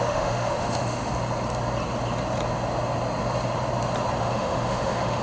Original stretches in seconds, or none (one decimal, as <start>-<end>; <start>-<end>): 1.1-4.2